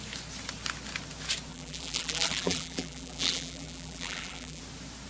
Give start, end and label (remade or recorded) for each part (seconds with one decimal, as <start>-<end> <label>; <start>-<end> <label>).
0.0-1.5 recorded; 1.5-4.6 remade; 4.6-5.1 recorded